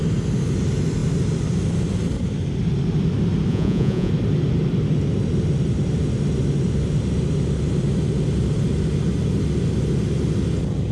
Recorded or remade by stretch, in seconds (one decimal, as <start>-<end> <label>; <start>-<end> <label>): 0.0-3.5 recorded; 3.5-4.1 remade; 4.1-10.9 recorded